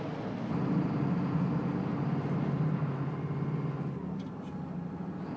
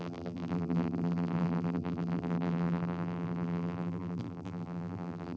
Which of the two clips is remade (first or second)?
second